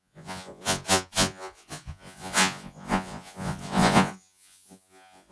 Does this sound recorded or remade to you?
remade